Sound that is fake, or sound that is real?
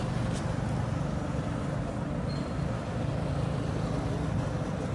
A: real